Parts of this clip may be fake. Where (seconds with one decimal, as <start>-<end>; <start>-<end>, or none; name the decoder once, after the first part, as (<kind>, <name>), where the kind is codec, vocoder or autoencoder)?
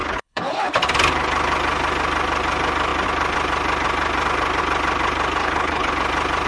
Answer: 0.0-0.7 (codec, HILCodec); 5.4-5.9